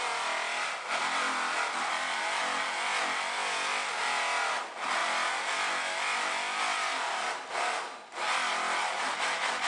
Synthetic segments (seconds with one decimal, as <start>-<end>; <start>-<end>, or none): none